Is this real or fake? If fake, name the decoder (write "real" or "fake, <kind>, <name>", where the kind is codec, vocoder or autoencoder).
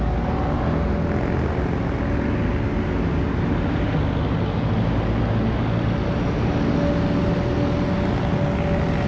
real